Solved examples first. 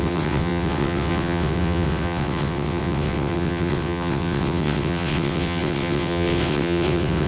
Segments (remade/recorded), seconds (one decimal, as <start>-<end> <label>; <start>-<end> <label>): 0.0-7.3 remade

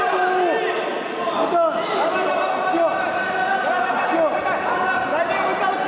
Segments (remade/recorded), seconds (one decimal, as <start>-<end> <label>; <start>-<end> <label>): 0.0-5.9 recorded

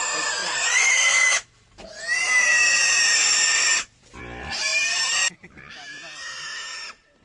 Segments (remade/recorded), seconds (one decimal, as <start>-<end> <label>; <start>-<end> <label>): 0.0-0.4 recorded; 0.4-1.9 remade; 1.9-2.5 recorded; 2.5-4.2 remade; 4.2-4.7 recorded; 4.7-5.7 remade; 5.7-7.2 recorded